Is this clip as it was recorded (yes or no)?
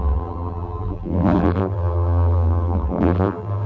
no